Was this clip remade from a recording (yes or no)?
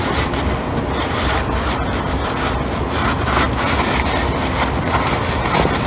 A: no